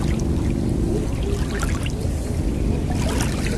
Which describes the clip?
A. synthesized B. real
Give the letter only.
B